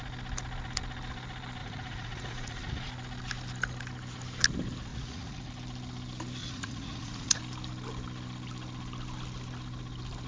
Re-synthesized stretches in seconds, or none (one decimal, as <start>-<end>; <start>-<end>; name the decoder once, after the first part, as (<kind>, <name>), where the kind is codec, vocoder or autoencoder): 1.6-2.9 (vocoder, Vocos); 4.9-5.5; 6.4-7.4